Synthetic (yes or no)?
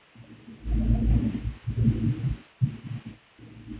no